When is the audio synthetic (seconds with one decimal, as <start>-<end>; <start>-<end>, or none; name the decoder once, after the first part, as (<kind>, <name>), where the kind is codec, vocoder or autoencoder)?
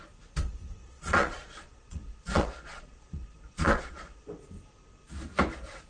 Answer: 0.8-4.3 (vocoder, Vocos)